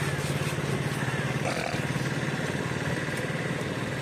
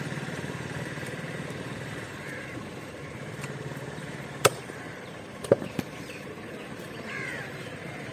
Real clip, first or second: first